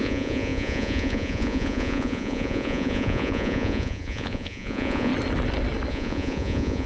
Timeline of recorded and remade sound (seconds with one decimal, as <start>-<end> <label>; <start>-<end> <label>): 0.0-5.1 remade; 5.1-5.9 recorded; 5.9-6.9 remade

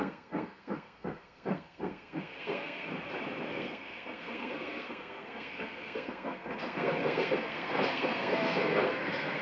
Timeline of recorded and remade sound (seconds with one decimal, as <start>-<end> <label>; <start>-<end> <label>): 0.0-2.9 remade; 2.9-3.5 recorded; 3.5-9.4 remade

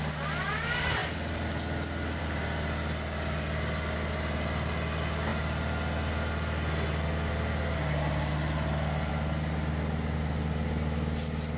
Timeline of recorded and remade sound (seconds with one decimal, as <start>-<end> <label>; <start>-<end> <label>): 0.0-11.6 recorded

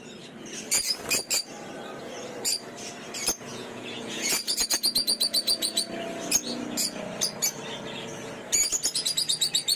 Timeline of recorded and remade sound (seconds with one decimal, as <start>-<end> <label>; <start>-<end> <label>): 0.0-3.5 recorded; 3.5-5.8 remade; 5.8-9.8 recorded

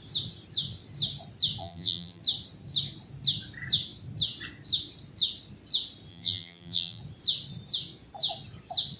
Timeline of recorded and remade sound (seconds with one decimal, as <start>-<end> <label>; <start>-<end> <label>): 0.0-1.6 recorded; 1.6-2.2 remade; 2.2-6.1 recorded; 6.1-7.0 remade; 7.0-9.0 recorded

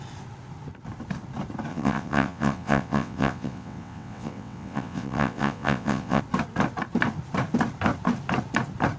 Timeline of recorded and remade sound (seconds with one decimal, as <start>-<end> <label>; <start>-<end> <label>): 0.0-1.7 recorded; 1.7-6.2 remade; 6.2-9.0 recorded